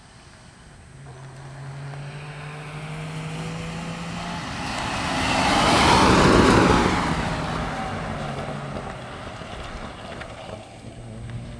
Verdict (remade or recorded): recorded